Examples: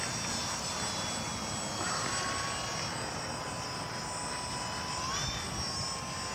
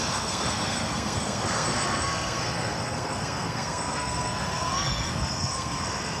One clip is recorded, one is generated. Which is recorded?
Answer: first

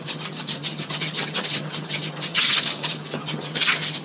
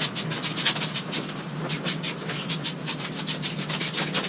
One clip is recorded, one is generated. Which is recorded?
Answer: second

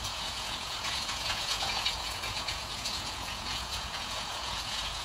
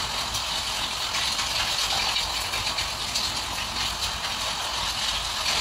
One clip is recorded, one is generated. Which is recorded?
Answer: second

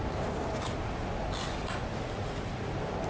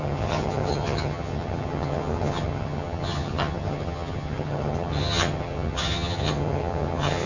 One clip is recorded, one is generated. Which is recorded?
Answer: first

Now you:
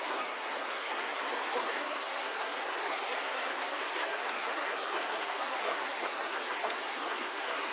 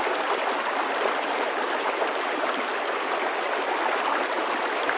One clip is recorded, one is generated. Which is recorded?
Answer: second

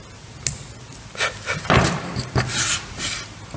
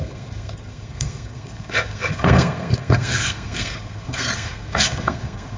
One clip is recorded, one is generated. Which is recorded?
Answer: first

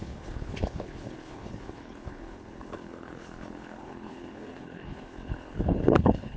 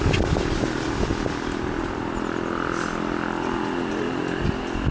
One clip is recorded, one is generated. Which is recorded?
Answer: second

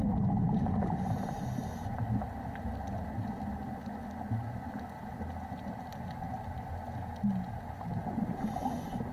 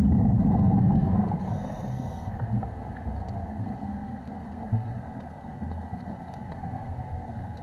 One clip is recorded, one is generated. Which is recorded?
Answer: first